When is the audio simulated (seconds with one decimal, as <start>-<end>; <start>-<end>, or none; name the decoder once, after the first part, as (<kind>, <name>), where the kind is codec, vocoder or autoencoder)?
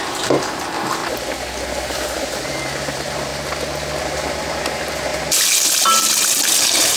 0.0-1.0 (vocoder, BigVGAN v2); 2.2-3.3; 4.0-7.0